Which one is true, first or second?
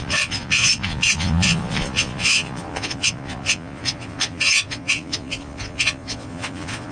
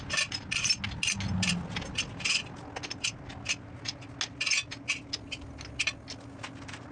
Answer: second